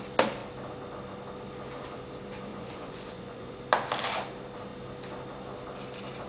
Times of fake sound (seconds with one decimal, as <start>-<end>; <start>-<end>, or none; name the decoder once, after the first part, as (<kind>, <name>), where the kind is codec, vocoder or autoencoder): 2.5-3.6 (vocoder, Vocos)